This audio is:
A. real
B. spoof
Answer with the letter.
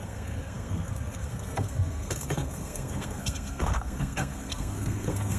B